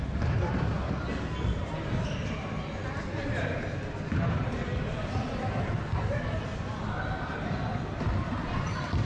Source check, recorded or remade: recorded